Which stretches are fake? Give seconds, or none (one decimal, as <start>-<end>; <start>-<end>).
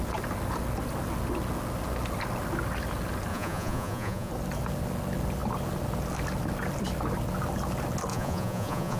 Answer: 3.3-4.3; 8.1-9.0